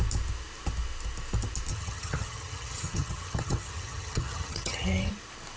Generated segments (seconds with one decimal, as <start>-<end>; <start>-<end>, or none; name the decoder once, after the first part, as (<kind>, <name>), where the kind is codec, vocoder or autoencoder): 1.7-5.1 (vocoder, HiFi-GAN)